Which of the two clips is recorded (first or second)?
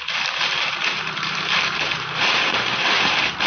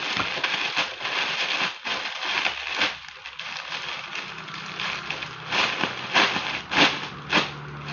second